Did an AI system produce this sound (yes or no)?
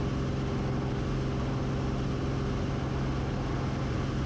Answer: no